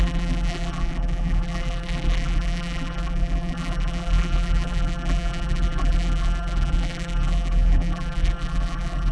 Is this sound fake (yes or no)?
yes